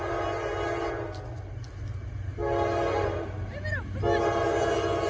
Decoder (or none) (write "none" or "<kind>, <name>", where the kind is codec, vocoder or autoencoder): none